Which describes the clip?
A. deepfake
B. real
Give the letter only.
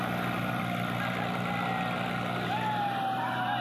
B